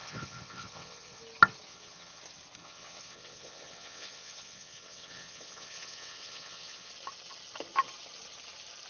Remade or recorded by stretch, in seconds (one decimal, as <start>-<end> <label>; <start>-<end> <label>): 0.0-1.2 remade; 1.2-1.7 recorded; 1.7-2.2 remade; 2.2-2.6 recorded; 2.6-6.9 remade; 6.9-8.9 recorded